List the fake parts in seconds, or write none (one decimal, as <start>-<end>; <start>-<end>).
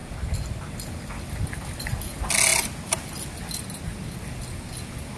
none